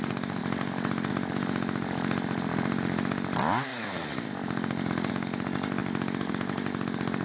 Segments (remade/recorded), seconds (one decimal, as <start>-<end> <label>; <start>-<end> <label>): 0.0-5.8 recorded; 5.8-6.3 remade; 6.3-7.2 recorded